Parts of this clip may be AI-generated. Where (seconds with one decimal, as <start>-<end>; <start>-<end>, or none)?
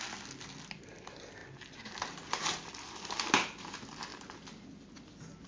none